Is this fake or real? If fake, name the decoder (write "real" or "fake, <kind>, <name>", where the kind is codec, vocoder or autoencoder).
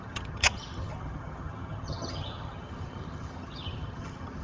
fake, vocoder, HiFi-GAN